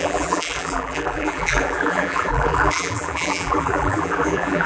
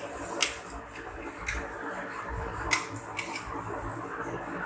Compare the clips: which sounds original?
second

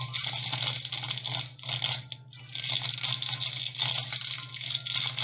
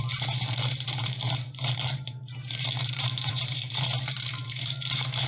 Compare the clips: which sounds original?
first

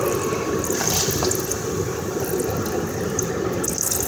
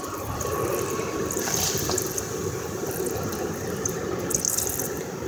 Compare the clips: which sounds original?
first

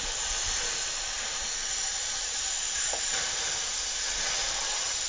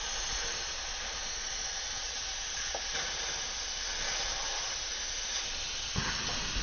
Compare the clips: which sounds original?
second